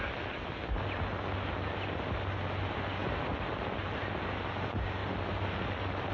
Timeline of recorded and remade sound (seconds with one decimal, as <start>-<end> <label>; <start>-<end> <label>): 0.0-6.1 recorded